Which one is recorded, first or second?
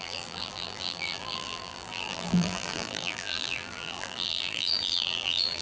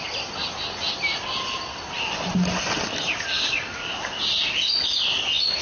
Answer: second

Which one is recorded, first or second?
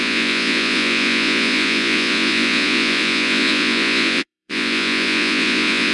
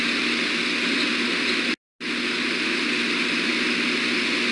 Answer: second